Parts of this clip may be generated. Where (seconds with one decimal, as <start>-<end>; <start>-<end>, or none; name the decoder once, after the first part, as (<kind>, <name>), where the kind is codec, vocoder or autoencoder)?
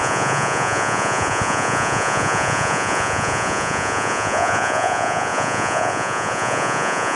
0.0-7.2 (vocoder, Vocos)